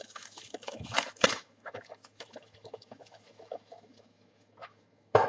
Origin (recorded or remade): remade